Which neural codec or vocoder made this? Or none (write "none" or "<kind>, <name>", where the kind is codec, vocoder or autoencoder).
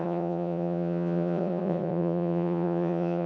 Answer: vocoder, Vocos